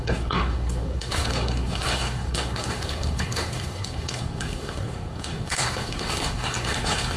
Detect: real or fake fake